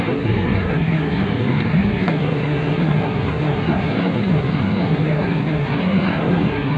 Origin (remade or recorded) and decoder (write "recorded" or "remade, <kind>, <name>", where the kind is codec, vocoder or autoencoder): remade, codec, SNAC